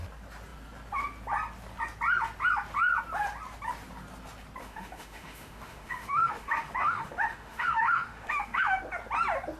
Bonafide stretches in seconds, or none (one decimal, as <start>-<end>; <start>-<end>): 0.0-4.6; 8.8-9.6